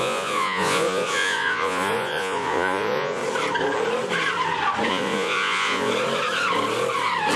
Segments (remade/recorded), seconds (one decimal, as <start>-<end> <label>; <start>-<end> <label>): 0.0-3.2 remade; 3.2-4.9 recorded; 4.9-5.9 remade; 5.9-7.4 recorded